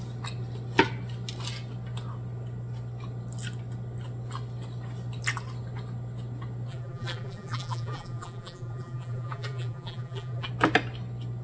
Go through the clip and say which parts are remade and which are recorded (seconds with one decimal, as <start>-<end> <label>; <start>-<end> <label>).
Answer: 0.0-6.7 recorded; 6.7-10.5 remade; 10.5-11.4 recorded